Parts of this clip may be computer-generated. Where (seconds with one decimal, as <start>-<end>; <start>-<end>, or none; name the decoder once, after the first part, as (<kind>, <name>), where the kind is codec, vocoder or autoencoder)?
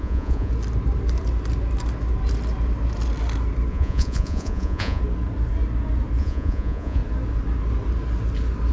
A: 0.0-0.5 (vocoder, Vocos); 3.7-5.0; 6.2-7.0